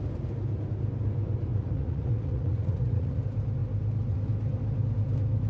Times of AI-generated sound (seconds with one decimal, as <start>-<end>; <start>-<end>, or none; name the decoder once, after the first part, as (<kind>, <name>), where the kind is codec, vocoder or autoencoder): 1.5-3.2 (vocoder, Vocos)